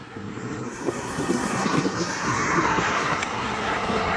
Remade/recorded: remade